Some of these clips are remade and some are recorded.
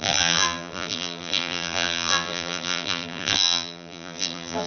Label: remade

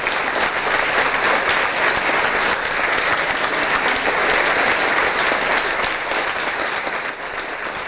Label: recorded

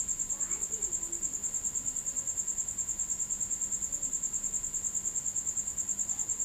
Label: recorded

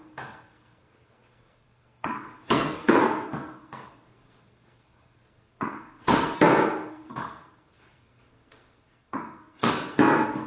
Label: remade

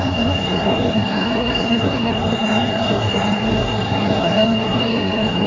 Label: remade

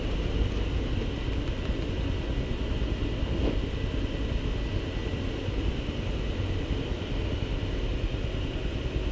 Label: recorded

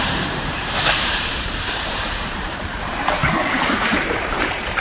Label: remade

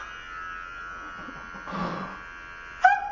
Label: recorded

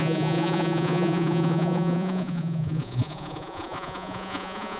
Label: remade